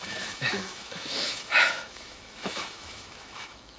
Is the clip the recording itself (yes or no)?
no